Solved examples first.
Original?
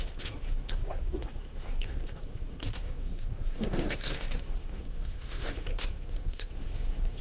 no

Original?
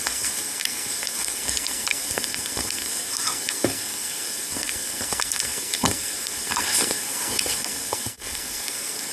no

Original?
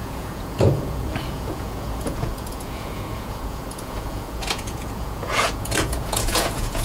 no